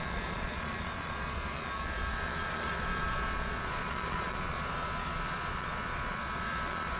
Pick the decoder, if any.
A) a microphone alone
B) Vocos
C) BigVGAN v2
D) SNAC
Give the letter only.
B